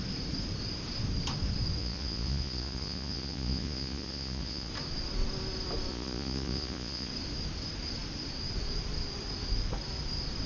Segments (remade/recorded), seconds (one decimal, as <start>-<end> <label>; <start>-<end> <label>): 0.0-1.8 recorded; 1.8-4.7 remade; 4.7-5.9 recorded; 5.9-7.1 remade; 7.1-10.5 recorded